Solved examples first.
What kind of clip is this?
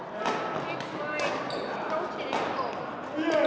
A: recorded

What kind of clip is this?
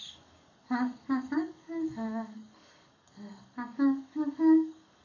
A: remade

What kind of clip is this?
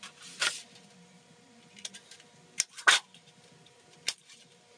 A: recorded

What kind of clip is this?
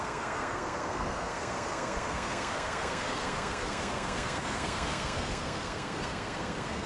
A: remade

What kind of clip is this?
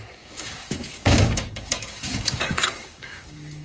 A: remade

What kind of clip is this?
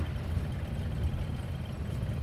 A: recorded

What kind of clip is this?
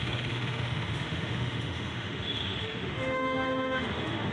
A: remade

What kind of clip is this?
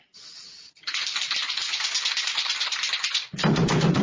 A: recorded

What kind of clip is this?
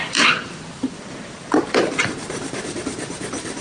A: remade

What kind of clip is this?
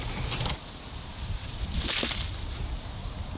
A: recorded